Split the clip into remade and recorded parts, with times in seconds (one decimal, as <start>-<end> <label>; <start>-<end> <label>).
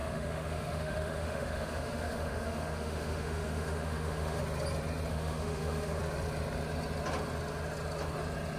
0.0-4.4 remade; 4.4-5.1 recorded; 5.1-6.0 remade; 6.0-8.6 recorded